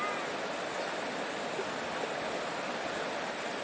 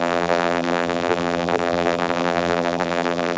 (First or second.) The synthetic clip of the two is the second